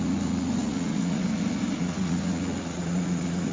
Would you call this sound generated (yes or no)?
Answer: yes